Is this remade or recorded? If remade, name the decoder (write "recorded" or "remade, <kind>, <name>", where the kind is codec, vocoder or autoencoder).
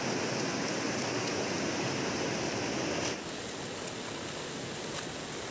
recorded